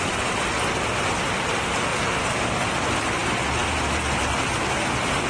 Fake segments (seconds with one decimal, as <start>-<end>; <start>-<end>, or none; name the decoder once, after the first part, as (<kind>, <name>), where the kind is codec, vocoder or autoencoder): none

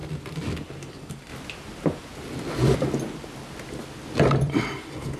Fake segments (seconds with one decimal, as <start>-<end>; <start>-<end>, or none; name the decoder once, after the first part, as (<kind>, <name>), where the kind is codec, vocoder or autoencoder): 0.9-1.3 (vocoder, BigVGAN v2); 4.2-5.2

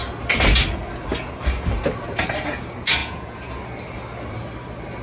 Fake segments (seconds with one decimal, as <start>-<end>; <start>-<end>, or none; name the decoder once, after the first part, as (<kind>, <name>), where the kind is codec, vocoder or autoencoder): 3.0-3.5 (vocoder, Vocos)